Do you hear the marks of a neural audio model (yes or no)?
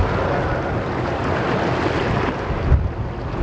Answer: no